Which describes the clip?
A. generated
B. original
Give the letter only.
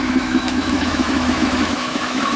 A